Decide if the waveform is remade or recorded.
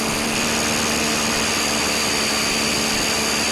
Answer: remade